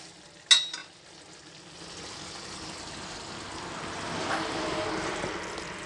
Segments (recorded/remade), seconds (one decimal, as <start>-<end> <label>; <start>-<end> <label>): 0.0-5.9 recorded